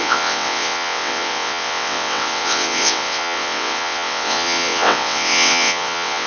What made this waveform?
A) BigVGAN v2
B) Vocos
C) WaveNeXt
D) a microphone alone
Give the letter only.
C